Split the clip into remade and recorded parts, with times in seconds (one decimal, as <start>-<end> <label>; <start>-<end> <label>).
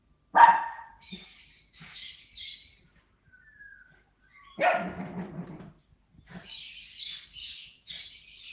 0.0-7.4 recorded; 7.4-7.9 remade; 7.9-8.5 recorded